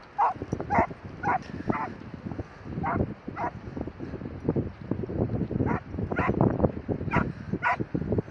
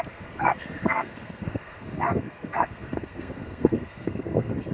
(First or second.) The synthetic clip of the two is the second